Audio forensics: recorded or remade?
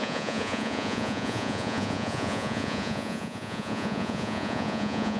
remade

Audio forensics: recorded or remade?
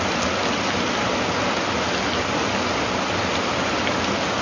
recorded